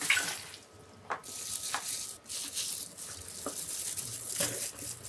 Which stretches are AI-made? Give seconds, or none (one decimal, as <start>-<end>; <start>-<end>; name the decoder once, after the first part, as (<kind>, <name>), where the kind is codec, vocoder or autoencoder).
none